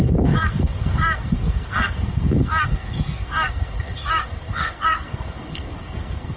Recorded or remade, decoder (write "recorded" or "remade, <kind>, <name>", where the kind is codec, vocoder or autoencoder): remade, codec, SNAC